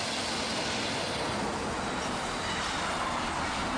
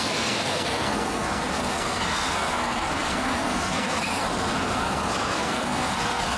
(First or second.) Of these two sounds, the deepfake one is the second